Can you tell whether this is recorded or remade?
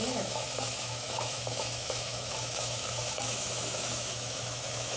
remade